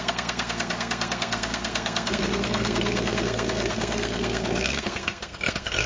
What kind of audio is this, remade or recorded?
remade